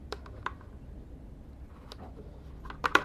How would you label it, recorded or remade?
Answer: recorded